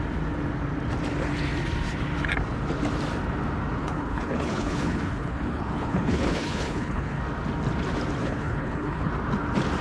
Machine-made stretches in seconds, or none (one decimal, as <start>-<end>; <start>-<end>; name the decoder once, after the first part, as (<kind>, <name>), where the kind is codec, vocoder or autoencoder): 3.8-7.2 (codec, HILCodec); 8.2-9.1

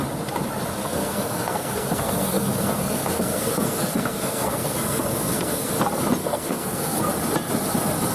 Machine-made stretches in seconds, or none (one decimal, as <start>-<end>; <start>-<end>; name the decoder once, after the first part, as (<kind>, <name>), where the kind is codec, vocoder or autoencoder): 0.8-5.7 (codec, SNAC); 6.2-7.1

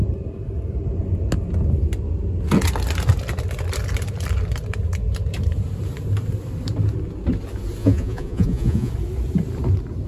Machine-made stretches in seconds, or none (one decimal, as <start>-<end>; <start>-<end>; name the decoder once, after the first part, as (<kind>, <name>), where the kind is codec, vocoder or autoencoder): 7.8-8.9 (vocoder, Vocos)